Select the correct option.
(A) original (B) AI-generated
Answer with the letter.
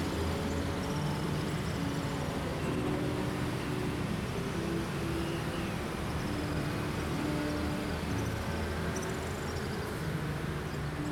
A